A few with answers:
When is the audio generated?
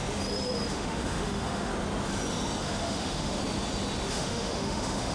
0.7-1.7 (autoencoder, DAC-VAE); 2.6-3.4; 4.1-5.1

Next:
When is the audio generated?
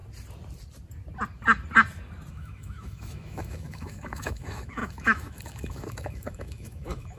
2.3-7.2 (autoencoder, DAC-VAE)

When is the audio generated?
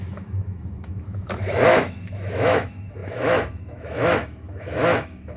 0.0-5.4 (autoencoder, DAC-VAE)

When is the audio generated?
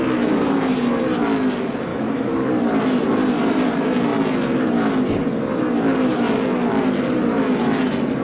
1.9-2.5 (autoencoder, DAC-VAE)